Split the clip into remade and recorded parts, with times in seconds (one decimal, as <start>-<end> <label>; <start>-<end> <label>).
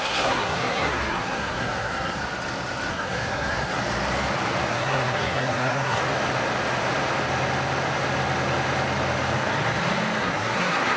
0.0-2.2 remade; 2.2-2.9 recorded; 2.9-3.8 remade; 3.8-4.7 recorded; 4.7-6.0 remade; 6.0-10.2 recorded; 10.2-11.0 remade